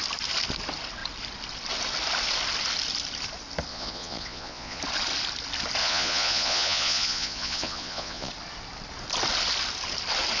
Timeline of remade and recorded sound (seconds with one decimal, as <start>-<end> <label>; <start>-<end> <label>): 0.0-3.7 recorded; 3.7-4.8 remade; 4.8-5.8 recorded; 5.8-8.3 remade; 8.3-10.4 recorded